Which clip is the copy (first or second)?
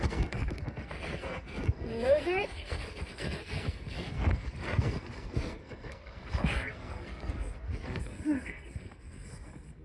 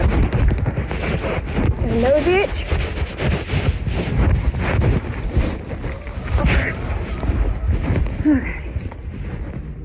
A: first